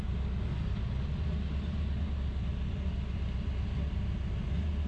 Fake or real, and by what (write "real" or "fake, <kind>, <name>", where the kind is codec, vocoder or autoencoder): real